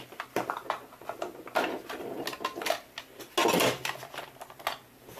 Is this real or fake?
real